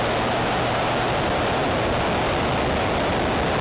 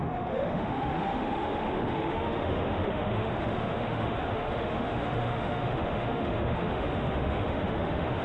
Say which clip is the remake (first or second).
second